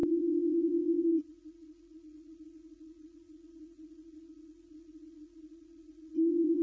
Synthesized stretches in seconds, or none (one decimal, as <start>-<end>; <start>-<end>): 0.0-6.6

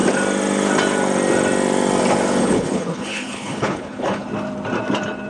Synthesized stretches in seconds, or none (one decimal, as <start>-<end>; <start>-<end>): 2.4-4.3

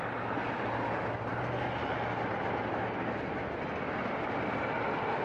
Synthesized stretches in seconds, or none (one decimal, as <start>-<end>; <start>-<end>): none

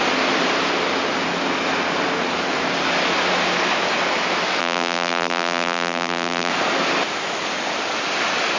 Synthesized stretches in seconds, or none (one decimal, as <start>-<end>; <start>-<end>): 4.6-6.5

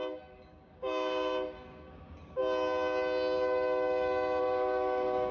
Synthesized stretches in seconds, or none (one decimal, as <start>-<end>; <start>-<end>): 0.0-2.4; 4.4-5.3